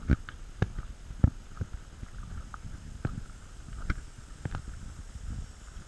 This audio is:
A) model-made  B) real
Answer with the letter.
B